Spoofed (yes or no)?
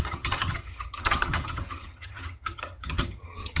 yes